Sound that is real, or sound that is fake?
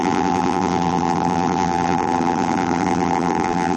fake